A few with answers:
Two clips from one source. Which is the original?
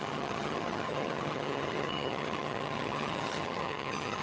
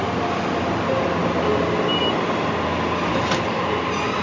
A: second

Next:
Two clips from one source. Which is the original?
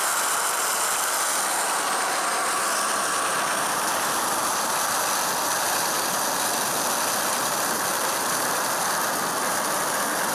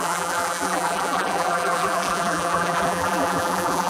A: first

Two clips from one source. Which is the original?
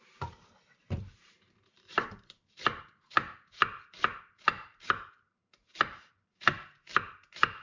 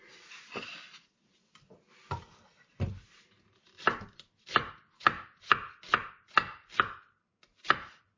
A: second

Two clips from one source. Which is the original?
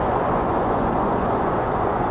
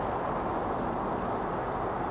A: second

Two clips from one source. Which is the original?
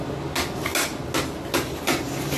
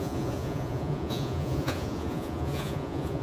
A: first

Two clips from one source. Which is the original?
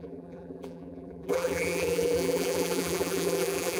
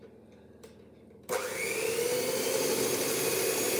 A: second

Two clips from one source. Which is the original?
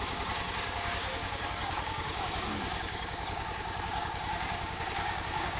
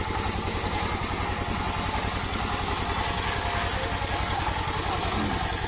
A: second